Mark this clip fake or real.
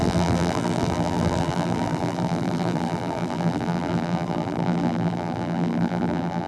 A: fake